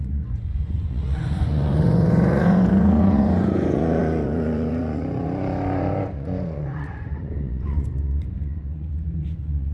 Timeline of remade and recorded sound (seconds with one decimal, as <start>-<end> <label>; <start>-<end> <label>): 0.0-9.7 remade